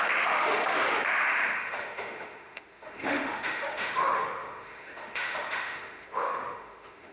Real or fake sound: fake